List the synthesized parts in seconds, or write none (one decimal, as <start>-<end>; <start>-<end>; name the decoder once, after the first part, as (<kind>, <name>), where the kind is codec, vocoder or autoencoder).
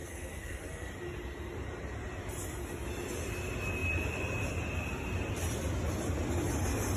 0.0-0.9 (codec, SNAC)